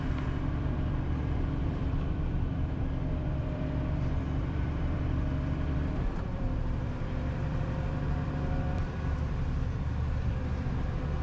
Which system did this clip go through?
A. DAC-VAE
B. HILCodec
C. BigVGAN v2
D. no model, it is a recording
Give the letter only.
C